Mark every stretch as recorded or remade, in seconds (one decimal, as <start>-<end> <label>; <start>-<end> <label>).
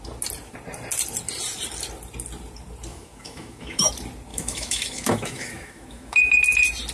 0.0-2.9 recorded; 2.9-3.9 remade; 3.9-4.3 recorded; 4.3-6.4 remade; 6.4-6.9 recorded